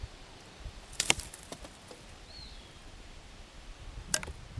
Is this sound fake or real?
fake